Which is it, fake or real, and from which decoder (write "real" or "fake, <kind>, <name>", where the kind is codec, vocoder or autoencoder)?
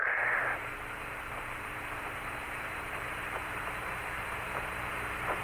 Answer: fake, vocoder, BigVGAN v2